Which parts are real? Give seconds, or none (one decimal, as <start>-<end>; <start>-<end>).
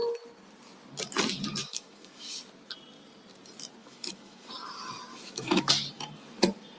0.0-1.6; 2.4-3.8; 4.5-5.1; 5.7-6.8